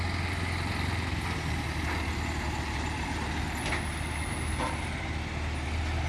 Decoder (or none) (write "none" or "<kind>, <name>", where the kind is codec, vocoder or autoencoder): none